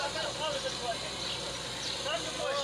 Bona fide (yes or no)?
yes